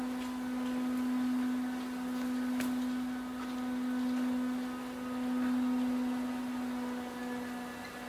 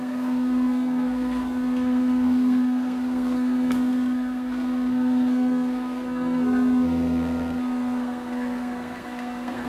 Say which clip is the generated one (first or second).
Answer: second